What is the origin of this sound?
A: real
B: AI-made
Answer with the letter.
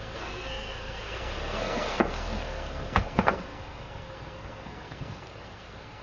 B